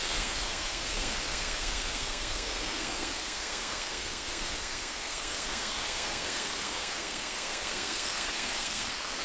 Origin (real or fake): fake